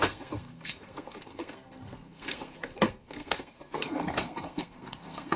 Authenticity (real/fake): fake